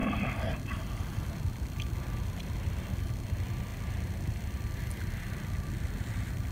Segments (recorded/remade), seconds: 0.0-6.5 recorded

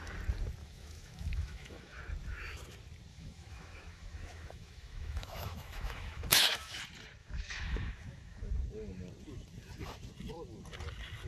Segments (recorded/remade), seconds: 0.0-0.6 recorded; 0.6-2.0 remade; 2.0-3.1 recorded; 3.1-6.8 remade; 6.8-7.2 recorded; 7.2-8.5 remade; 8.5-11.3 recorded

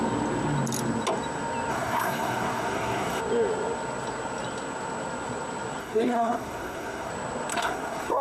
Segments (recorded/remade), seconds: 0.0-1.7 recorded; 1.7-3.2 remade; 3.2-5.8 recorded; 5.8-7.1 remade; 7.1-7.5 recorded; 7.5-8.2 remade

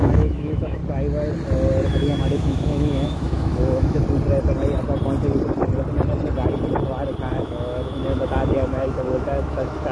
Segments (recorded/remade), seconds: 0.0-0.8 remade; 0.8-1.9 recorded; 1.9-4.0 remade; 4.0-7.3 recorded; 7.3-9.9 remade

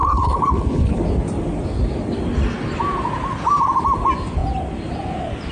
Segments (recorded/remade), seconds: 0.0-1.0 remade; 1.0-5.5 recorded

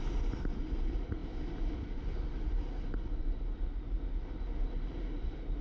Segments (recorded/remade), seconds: 0.0-5.6 recorded

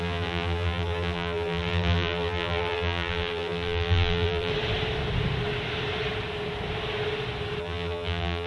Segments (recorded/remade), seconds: 0.0-4.5 remade; 4.5-7.6 recorded; 7.6-8.5 remade